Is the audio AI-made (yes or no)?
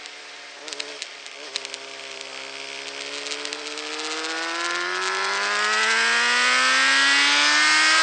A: no